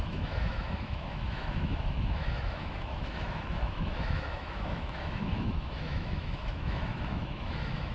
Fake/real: fake